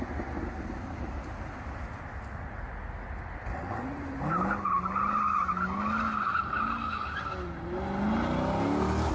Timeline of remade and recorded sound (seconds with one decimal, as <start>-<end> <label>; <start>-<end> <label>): 0.0-9.1 recorded